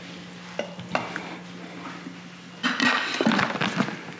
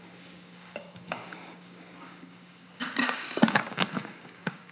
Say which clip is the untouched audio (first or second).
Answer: first